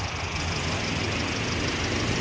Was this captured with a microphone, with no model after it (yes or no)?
yes